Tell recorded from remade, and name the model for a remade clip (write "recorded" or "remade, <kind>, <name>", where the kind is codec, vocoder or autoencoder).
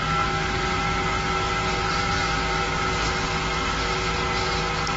recorded